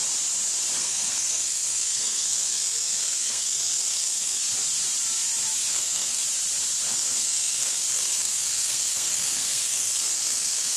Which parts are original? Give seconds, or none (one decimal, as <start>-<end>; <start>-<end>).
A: 0.0-0.8; 4.4-5.7; 6.2-6.9